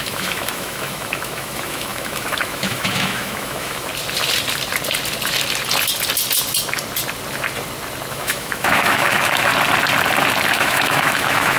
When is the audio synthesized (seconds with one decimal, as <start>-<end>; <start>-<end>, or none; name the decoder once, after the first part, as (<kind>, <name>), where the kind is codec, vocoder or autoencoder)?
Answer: 0.0-3.9 (autoencoder, DAC-VAE); 8.1-9.5; 10.5-11.6